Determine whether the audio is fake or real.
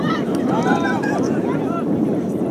fake